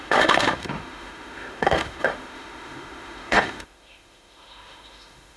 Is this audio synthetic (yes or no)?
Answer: yes